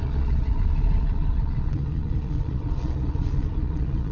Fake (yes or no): yes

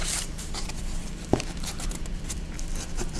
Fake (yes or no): yes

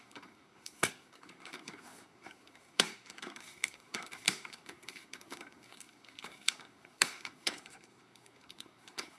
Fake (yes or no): yes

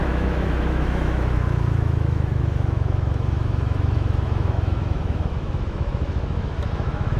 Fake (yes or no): yes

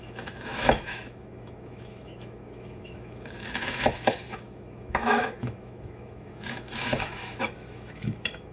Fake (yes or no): yes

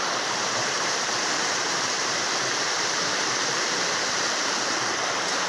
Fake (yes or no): yes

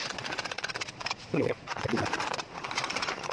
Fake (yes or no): yes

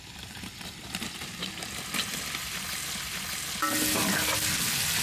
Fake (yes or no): no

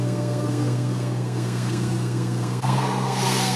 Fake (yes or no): yes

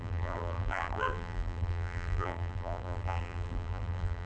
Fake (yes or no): yes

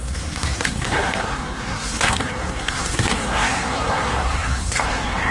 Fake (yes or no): yes